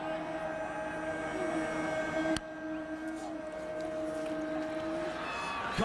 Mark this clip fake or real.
real